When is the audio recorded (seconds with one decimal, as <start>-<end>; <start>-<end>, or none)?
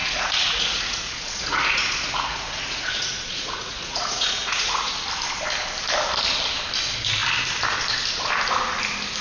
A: 4.9-9.2